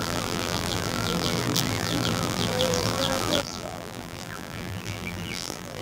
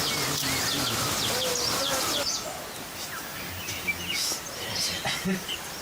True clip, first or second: second